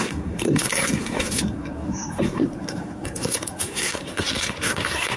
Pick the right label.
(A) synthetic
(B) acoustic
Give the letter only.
A